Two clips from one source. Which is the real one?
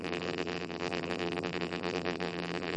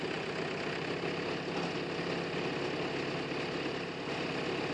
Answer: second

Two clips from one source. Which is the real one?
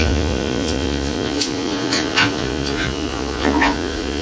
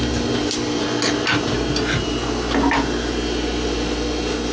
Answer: second